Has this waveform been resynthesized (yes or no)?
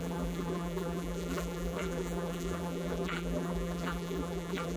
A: yes